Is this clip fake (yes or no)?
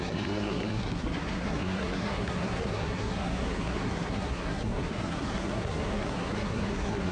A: yes